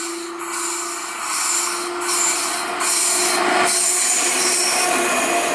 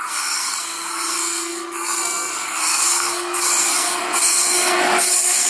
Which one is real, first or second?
first